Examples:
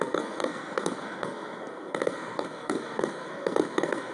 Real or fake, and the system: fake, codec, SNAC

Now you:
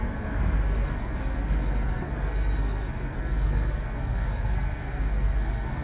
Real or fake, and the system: fake, codec, SNAC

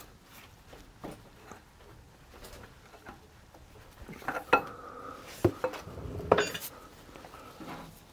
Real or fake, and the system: real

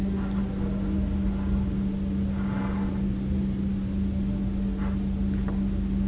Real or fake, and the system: real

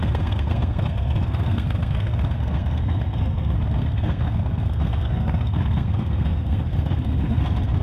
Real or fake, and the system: fake, codec, SNAC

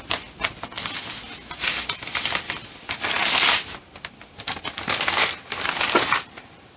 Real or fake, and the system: real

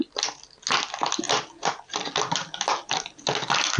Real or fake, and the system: real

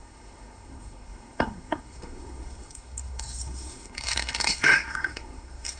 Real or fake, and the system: fake, codec, SNAC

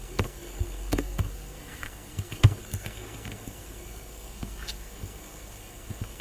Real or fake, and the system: fake, codec, SNAC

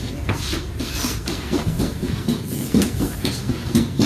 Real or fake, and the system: fake, codec, SNAC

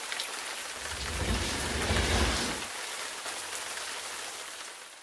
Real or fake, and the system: real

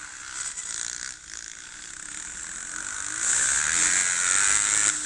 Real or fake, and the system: real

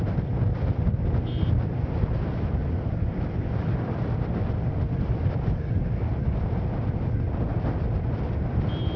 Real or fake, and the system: real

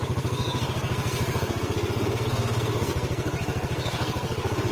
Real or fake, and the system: fake, codec, SNAC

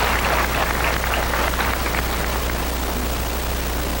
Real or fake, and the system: real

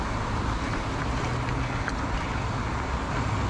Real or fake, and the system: real